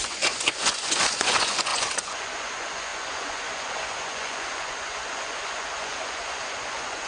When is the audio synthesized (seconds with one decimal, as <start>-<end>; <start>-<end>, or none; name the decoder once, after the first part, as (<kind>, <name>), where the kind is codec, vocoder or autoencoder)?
0.0-7.1 (vocoder, Vocos)